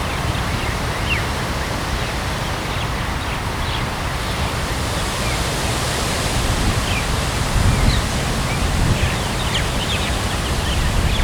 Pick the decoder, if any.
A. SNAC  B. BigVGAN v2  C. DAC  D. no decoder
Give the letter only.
D